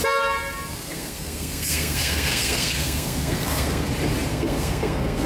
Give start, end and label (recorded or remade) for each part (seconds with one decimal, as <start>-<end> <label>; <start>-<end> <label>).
0.0-0.7 recorded; 0.7-3.9 remade; 3.9-4.3 recorded; 4.3-5.3 remade